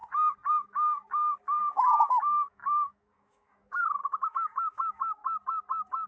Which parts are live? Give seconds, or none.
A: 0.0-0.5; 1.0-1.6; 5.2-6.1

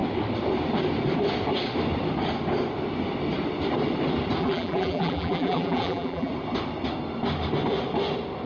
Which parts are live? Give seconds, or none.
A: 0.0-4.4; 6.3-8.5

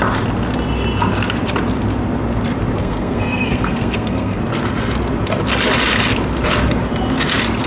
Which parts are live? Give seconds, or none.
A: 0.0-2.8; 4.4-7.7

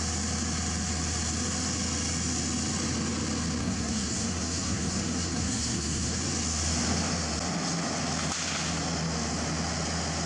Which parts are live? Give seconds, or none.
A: 0.0-3.6; 6.2-10.3

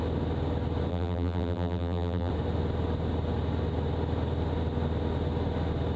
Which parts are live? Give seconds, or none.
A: 0.0-0.9; 2.3-6.0

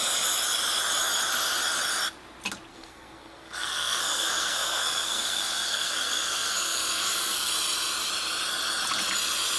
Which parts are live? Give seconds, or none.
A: 0.0-2.7; 7.5-9.6